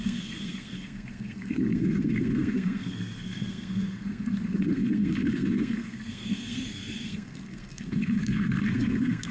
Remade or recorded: remade